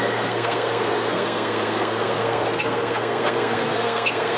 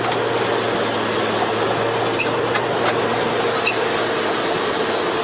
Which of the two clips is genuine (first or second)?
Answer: second